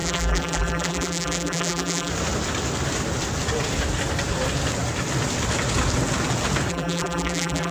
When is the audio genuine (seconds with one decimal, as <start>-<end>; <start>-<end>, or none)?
2.1-6.7